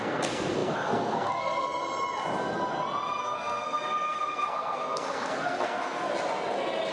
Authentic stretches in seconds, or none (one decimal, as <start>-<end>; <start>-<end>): 1.8-3.2; 6.0-6.9